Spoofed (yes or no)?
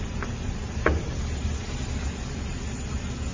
no